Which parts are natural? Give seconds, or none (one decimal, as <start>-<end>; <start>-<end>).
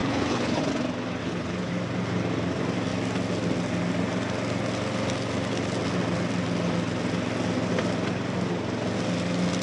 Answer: 0.7-1.2; 1.7-9.6